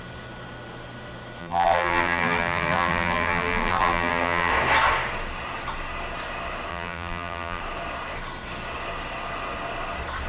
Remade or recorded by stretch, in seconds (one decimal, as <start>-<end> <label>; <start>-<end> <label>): 0.0-1.4 recorded; 1.4-4.5 remade; 4.5-6.7 recorded; 6.7-7.6 remade; 7.6-10.3 recorded